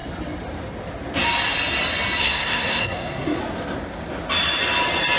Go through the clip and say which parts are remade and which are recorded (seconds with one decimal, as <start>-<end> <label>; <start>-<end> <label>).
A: 0.0-2.2 recorded; 2.2-3.4 remade; 3.4-5.2 recorded